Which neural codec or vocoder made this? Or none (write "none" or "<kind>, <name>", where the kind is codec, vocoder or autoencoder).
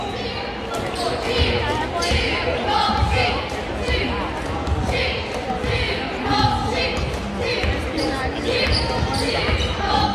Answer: none